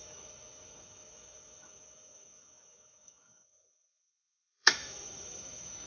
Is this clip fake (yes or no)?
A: yes